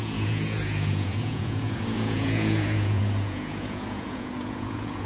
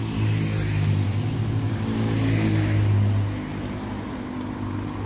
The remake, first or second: first